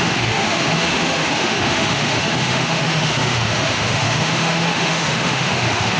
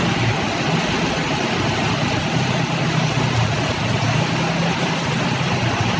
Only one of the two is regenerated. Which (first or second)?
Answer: first